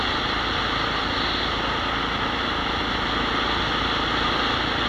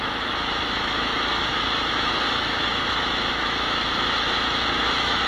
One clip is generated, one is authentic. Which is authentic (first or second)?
first